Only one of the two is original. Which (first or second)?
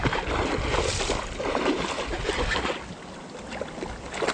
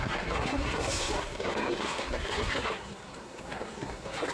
first